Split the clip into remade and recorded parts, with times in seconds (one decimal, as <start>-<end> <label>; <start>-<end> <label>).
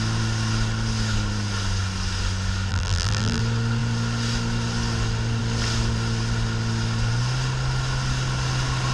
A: 0.0-2.7 recorded; 2.7-3.4 remade; 3.4-8.9 recorded